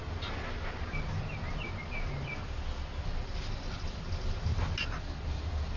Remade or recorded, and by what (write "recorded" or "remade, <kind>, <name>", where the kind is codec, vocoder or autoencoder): recorded